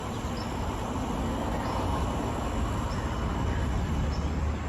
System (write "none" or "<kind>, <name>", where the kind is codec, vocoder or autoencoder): none